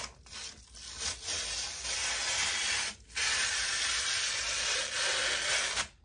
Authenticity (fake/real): real